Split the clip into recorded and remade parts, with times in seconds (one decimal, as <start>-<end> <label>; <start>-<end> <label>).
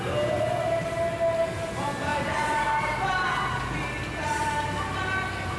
0.0-5.6 recorded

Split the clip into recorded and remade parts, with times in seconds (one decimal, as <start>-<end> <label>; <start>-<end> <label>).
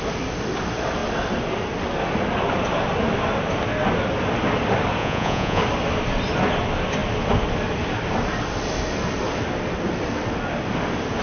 0.0-5.0 recorded; 5.0-5.6 remade; 5.6-11.2 recorded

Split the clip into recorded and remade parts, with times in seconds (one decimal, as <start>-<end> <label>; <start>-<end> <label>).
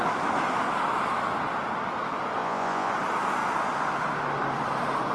0.0-2.4 recorded; 2.4-2.9 remade; 2.9-5.1 recorded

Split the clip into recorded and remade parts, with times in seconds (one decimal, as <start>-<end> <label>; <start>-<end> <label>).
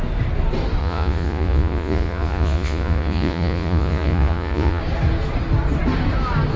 0.0-0.8 recorded; 0.8-4.8 remade; 4.8-6.6 recorded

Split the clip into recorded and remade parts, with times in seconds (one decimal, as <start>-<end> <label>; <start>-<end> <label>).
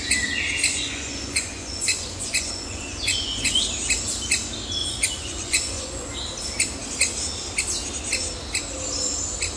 0.0-0.7 recorded; 0.7-3.6 remade; 3.6-4.8 recorded; 4.8-6.1 remade; 6.1-9.6 recorded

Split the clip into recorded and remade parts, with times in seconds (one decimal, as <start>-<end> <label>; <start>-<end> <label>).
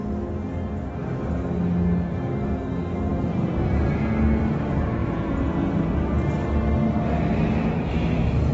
0.0-5.0 recorded; 5.0-5.7 remade; 5.7-8.5 recorded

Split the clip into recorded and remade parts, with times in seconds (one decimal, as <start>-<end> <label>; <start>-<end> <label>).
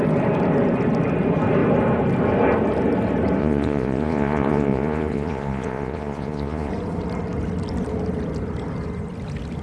0.0-3.4 recorded; 3.4-6.7 remade; 6.7-9.6 recorded